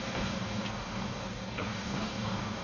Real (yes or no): no